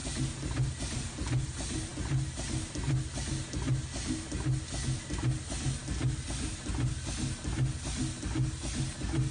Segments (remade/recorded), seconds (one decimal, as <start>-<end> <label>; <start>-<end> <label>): 0.0-9.3 recorded